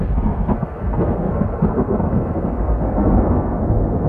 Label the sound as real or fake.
fake